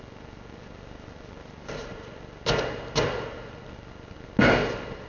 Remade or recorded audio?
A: recorded